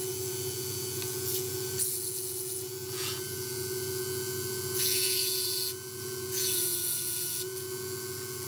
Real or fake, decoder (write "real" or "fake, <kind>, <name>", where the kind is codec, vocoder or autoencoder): fake, vocoder, Vocos